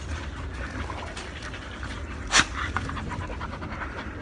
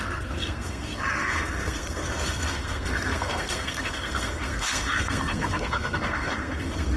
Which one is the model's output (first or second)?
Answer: second